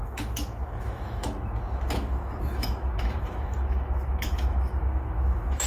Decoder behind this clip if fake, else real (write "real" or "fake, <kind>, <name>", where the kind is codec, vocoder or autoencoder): fake, autoencoder, DAC-VAE